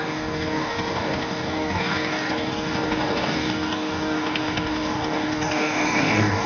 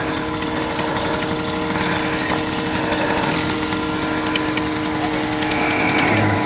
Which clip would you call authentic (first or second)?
second